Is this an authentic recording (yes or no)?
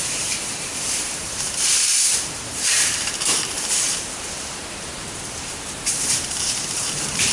no